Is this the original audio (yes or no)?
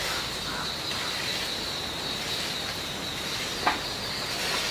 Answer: yes